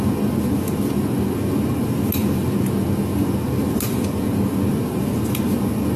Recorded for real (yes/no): yes